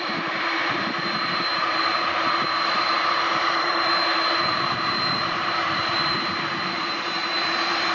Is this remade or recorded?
remade